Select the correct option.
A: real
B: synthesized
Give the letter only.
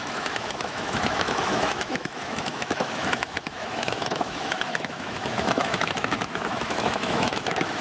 B